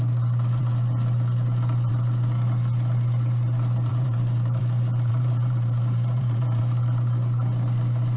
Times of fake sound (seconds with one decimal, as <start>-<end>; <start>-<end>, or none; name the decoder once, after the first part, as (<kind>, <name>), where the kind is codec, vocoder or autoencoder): 3.9-4.6 (vocoder, BigVGAN v2); 5.1-6.6